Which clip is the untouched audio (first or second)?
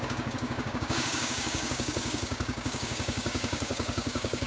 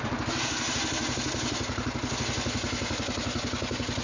second